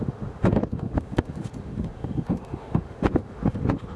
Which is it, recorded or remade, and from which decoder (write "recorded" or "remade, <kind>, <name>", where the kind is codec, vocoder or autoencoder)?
remade, autoencoder, DAC-VAE